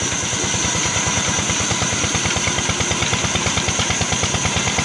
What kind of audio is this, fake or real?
real